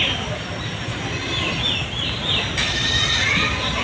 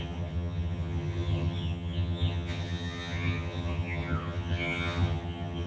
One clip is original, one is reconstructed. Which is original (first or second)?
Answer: first